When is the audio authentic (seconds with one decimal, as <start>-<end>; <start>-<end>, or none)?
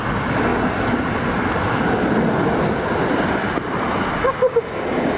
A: 0.0-5.2